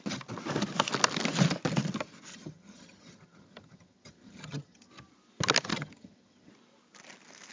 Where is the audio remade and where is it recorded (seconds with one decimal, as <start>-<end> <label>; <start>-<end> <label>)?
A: 0.0-2.3 recorded; 2.3-4.9 remade; 4.9-5.7 recorded; 5.7-6.5 remade; 6.5-7.5 recorded